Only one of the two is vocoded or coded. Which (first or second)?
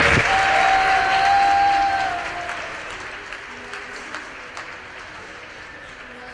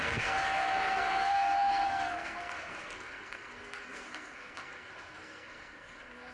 second